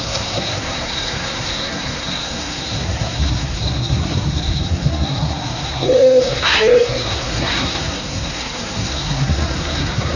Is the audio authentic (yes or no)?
no